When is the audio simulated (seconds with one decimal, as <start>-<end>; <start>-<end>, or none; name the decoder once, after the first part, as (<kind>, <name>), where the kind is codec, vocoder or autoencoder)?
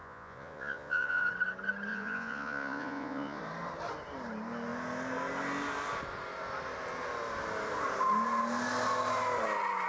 0.0-1.3 (vocoder, Vocos); 1.9-3.4